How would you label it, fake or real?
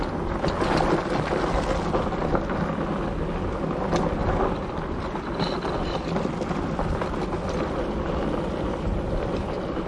real